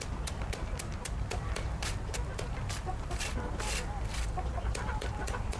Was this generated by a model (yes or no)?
yes